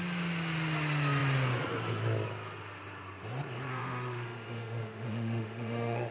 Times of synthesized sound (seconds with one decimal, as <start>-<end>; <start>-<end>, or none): 3.7-6.1